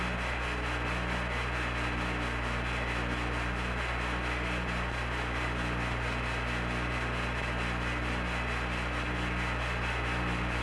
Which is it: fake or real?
real